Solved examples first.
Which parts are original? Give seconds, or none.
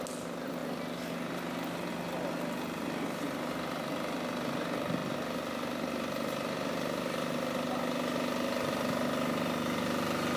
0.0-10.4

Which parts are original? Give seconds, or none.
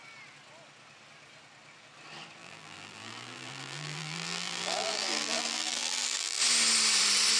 0.0-2.4; 6.4-7.4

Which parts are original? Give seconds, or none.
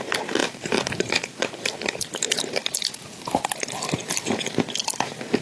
0.0-0.4; 3.2-5.4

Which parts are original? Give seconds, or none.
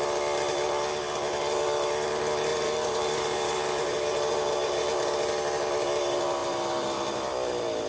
0.0-2.5; 4.9-7.9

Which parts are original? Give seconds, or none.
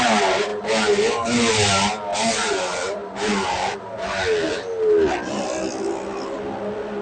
0.0-2.1; 2.6-7.0